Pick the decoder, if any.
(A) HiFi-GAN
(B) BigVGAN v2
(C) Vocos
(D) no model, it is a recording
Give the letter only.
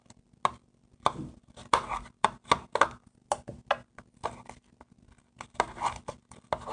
D